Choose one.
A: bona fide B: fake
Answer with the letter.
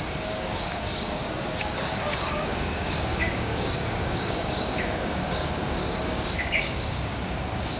B